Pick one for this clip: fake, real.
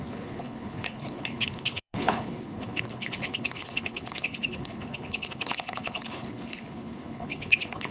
fake